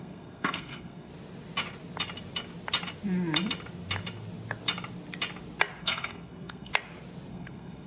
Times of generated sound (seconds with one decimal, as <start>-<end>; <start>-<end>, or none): 0.0-1.1; 5.8-6.7; 7.3-7.9